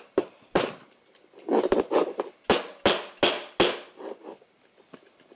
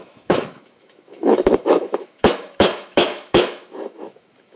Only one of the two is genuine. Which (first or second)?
first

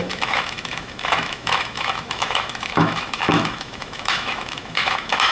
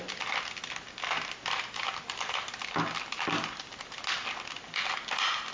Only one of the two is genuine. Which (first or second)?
second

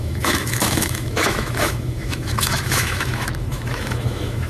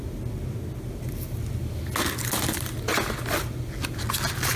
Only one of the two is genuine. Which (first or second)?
second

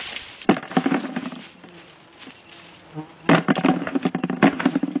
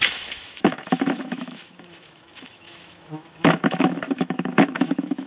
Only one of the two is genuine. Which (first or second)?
first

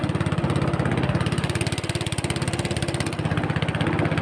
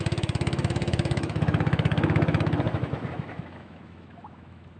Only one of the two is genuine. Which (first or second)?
first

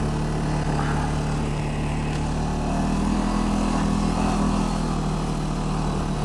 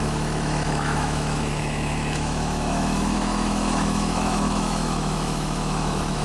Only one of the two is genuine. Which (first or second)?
first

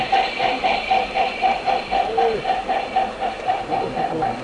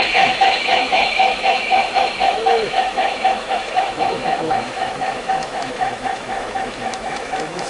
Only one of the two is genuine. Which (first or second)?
first